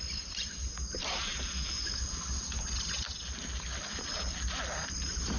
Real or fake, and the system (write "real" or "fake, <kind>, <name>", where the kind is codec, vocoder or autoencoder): real